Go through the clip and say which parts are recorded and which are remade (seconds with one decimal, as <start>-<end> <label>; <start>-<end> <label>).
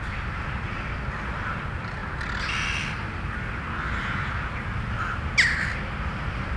0.0-6.6 recorded